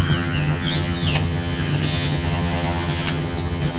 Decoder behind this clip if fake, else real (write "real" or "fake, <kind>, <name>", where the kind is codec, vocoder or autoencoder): fake, vocoder, HiFi-GAN